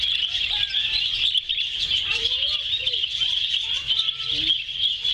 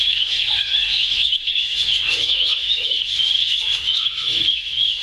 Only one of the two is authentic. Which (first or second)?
first